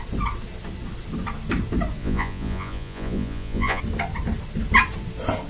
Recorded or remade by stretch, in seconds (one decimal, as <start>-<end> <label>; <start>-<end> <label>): 0.0-2.0 recorded; 2.0-3.8 remade; 3.8-5.5 recorded